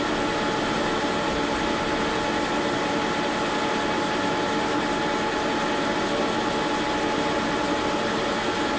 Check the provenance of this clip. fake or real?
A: real